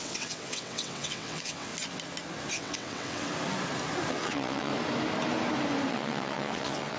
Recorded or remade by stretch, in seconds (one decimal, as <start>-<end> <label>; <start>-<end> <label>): 0.0-1.7 remade; 1.7-2.5 recorded; 2.5-3.3 remade; 3.3-4.1 recorded; 4.1-4.7 remade; 4.7-5.9 recorded; 5.9-7.0 remade